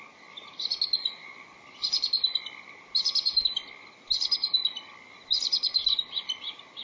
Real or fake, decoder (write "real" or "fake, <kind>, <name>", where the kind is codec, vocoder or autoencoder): real